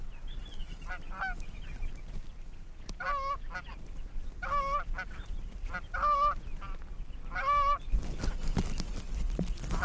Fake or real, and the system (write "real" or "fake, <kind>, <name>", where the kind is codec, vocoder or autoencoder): real